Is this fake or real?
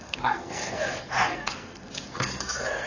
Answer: fake